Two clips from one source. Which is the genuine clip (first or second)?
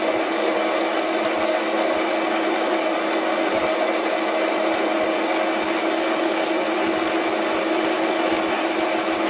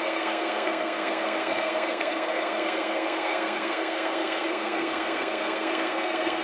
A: first